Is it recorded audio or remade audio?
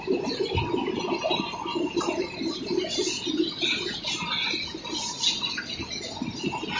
recorded